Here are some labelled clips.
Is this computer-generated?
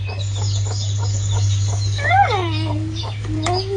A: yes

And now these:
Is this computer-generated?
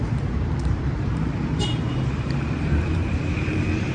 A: yes